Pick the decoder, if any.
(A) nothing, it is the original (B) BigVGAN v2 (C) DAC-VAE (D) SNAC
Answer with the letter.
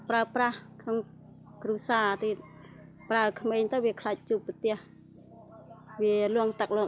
A